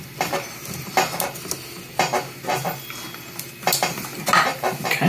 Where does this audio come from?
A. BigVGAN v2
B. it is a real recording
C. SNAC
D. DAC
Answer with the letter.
B